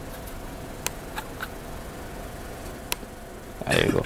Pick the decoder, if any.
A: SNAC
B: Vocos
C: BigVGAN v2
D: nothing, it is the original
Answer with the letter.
D